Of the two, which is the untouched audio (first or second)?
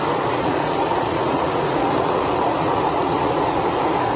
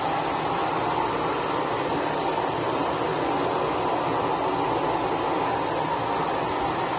second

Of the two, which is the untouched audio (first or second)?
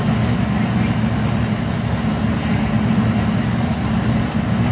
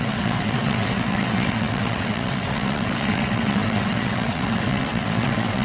first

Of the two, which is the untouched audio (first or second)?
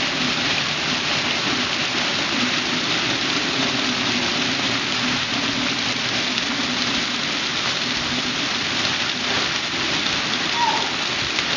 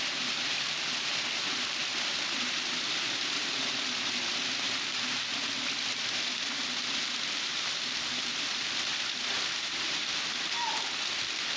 first